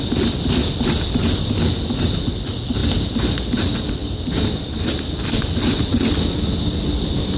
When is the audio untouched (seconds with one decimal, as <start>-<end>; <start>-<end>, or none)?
0.0-7.4